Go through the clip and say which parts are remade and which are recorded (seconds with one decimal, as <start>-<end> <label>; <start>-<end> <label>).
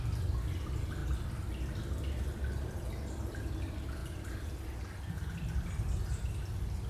0.0-4.0 recorded; 4.0-4.8 remade; 4.8-6.9 recorded